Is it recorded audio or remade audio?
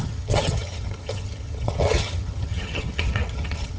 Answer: remade